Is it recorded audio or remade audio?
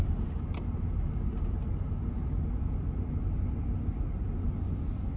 recorded